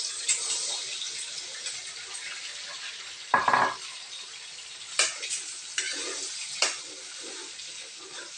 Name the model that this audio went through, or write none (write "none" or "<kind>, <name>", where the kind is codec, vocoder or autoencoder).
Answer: none